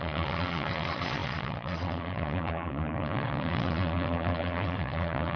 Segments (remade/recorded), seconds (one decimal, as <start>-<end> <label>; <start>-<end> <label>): 0.0-5.4 remade